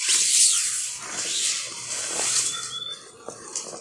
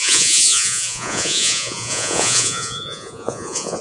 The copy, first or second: second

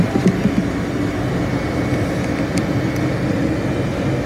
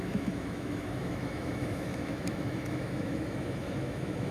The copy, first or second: second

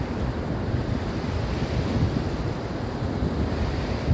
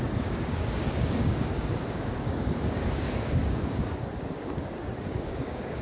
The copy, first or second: second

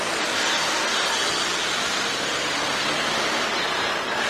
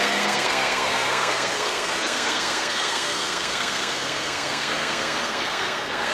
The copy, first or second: second